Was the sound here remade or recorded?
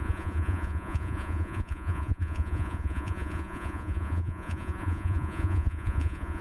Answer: remade